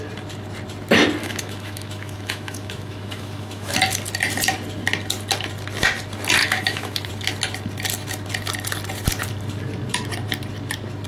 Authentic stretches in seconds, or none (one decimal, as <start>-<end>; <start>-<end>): 0.0-1.2; 3.7-6.4; 7.1-11.1